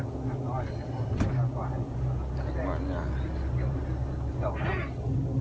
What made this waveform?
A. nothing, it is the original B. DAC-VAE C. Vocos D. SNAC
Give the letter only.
A